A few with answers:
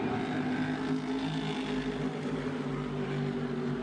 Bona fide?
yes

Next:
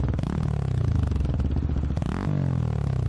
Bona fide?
yes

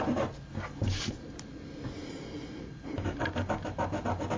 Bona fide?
yes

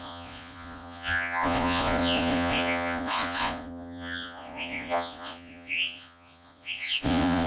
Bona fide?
no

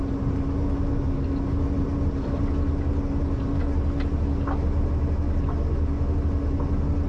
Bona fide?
yes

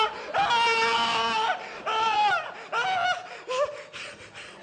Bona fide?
yes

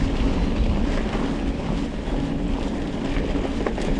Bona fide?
yes